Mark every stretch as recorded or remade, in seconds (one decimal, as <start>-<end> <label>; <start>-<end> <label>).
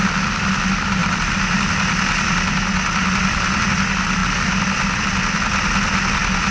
0.0-6.5 recorded